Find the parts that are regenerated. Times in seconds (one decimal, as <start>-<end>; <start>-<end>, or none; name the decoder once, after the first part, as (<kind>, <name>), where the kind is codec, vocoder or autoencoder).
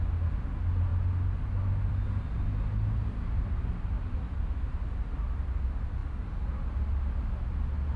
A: none